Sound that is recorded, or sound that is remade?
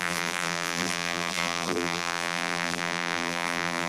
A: remade